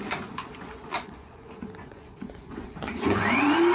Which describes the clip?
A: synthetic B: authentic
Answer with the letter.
A